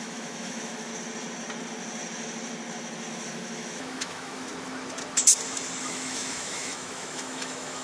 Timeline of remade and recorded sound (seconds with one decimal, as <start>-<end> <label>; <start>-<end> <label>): 0.0-0.9 remade; 0.9-3.1 recorded; 3.1-4.5 remade; 4.5-5.8 recorded; 5.8-7.8 remade